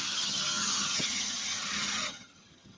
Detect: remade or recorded remade